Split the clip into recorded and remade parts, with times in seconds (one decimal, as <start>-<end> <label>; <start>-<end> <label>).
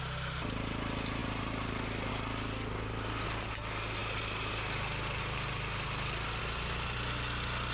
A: 0.0-1.2 recorded; 1.2-2.1 remade; 2.1-4.0 recorded; 4.0-6.4 remade; 6.4-7.7 recorded